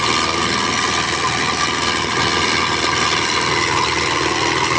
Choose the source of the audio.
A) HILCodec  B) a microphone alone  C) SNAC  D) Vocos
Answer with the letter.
B